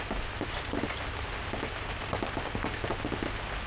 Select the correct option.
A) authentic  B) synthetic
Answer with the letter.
A